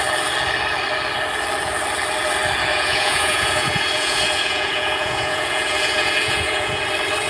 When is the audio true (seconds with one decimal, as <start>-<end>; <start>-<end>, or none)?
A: 0.0-2.7; 6.8-7.3